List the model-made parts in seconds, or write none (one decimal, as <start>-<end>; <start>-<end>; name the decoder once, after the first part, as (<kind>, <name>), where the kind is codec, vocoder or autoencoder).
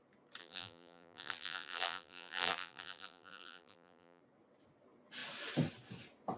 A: 0.4-4.2 (vocoder, BigVGAN v2)